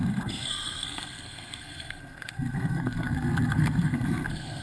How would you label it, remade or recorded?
remade